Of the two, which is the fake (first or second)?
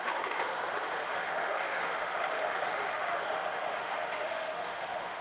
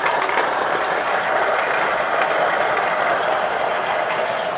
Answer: first